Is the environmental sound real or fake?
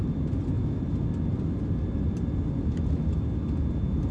real